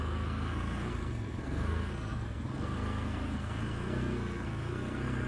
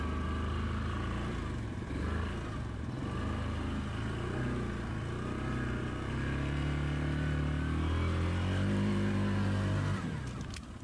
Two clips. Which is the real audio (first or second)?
second